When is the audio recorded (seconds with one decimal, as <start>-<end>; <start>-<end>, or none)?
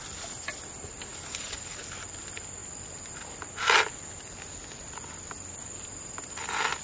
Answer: 0.0-6.8